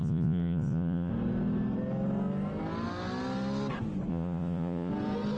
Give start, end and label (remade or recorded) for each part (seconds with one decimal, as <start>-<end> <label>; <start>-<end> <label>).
0.0-1.1 remade; 1.1-4.1 recorded; 4.1-4.9 remade; 4.9-5.4 recorded